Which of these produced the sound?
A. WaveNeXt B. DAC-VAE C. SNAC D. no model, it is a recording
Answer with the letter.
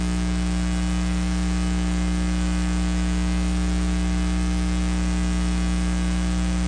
B